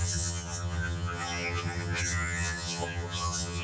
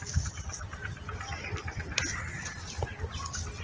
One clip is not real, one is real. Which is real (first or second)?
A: second